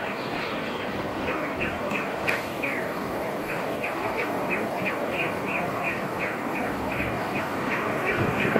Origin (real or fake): fake